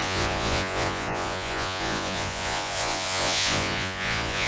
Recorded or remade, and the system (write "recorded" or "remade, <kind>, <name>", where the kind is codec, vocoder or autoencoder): remade, vocoder, Vocos